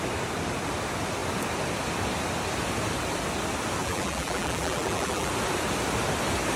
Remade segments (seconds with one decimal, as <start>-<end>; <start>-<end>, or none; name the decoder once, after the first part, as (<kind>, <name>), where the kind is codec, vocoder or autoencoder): 3.8-5.3 (vocoder, BigVGAN v2)